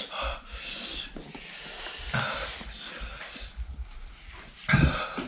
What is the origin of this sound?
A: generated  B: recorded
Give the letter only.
B